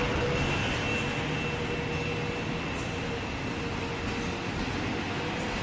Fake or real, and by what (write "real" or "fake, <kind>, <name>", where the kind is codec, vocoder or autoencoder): real